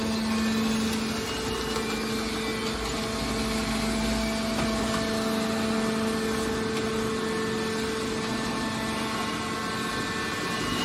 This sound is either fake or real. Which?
real